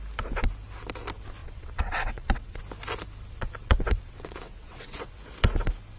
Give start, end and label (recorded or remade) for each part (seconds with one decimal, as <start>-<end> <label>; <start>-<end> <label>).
0.0-1.4 recorded; 1.4-2.6 remade; 2.6-3.6 recorded; 3.6-5.1 remade; 5.1-6.0 recorded